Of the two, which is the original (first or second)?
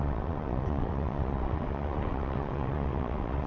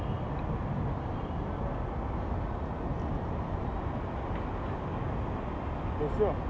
second